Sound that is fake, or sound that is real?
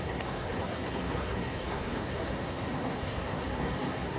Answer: fake